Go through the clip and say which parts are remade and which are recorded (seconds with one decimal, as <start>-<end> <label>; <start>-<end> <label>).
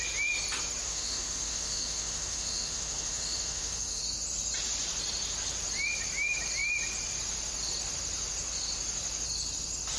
0.0-0.8 recorded; 0.8-4.0 remade; 4.0-10.0 recorded